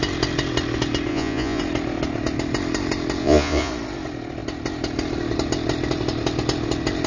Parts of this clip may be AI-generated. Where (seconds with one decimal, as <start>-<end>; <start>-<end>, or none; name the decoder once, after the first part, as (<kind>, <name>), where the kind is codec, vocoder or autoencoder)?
1.1-1.6 (vocoder, Vocos); 3.2-3.7

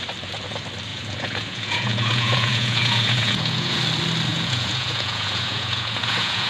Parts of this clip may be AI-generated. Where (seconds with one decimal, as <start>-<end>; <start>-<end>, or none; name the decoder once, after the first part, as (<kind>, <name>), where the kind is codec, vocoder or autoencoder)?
0.9-3.8 (vocoder, Vocos); 4.3-6.5

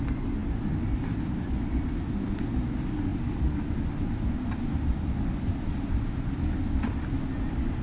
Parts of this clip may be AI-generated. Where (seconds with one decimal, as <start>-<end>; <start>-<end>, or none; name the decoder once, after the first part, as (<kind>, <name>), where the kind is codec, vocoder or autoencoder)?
none